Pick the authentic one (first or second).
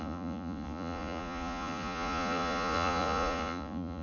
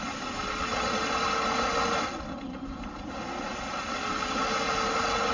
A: second